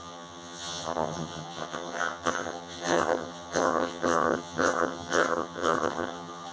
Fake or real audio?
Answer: fake